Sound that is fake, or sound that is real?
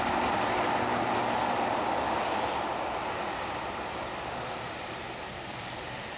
real